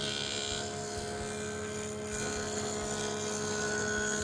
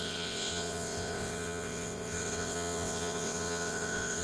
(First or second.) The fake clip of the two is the second